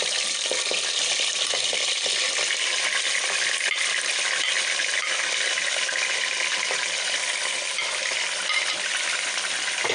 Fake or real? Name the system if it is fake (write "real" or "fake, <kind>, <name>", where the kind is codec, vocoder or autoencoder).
real